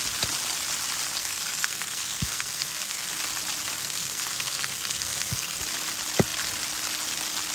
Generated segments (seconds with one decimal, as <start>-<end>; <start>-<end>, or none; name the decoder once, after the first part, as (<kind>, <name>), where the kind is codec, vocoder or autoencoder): 1.2-3.1 (codec, SNAC); 3.8-5.6